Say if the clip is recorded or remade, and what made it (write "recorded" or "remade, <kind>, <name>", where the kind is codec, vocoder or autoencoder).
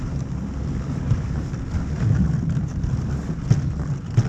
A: recorded